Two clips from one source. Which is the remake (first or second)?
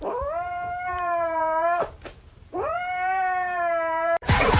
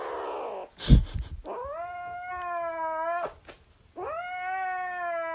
first